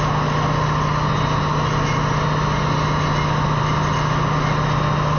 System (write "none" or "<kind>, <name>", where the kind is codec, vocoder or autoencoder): none